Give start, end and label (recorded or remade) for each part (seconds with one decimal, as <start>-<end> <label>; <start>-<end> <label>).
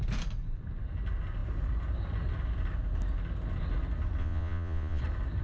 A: 0.0-4.2 recorded; 4.2-5.0 remade; 5.0-5.4 recorded